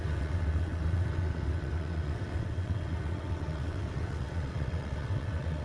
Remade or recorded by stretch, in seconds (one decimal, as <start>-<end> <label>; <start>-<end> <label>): 0.0-5.6 remade